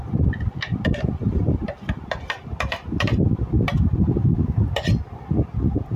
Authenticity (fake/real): real